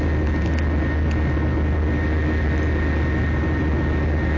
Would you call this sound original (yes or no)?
yes